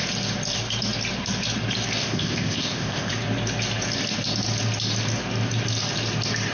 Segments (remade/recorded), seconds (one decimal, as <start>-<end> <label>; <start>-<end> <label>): 0.0-2.0 recorded; 2.0-3.1 remade; 3.1-6.5 recorded